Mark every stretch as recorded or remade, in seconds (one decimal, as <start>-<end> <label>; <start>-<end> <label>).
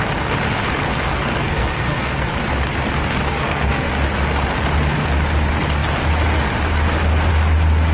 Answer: 0.0-1.1 recorded; 1.1-2.3 remade; 2.3-3.3 recorded; 3.3-3.9 remade; 3.9-7.9 recorded